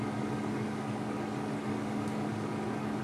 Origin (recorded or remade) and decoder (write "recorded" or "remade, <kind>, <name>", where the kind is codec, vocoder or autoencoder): remade, codec, DAC